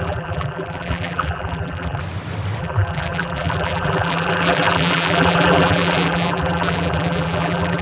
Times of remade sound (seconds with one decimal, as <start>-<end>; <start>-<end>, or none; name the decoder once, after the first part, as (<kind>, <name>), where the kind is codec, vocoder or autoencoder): 0.0-2.0 (vocoder, BigVGAN v2); 2.6-7.8